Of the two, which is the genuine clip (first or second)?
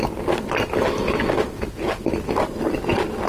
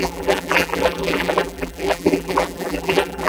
first